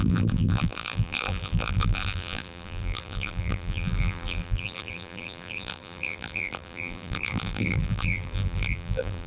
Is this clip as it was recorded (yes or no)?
no